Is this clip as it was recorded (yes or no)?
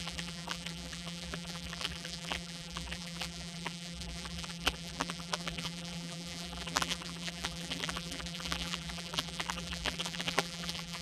no